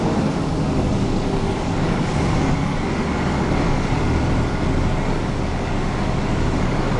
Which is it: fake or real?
fake